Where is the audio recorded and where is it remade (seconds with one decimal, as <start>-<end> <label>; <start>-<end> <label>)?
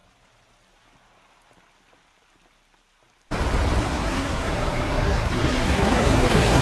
0.0-3.8 recorded; 3.8-6.6 remade